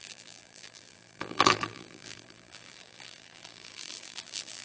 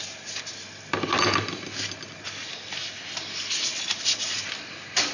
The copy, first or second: first